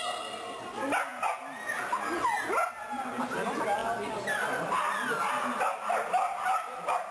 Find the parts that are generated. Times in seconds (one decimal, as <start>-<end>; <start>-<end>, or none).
none